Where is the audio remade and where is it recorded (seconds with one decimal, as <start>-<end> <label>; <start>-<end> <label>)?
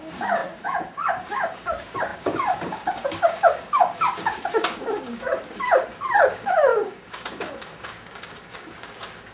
0.0-9.3 remade